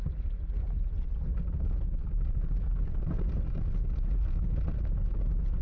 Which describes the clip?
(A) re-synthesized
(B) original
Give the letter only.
B